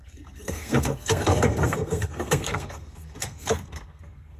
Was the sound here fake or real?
fake